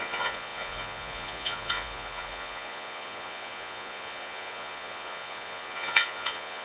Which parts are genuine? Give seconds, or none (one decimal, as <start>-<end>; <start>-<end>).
none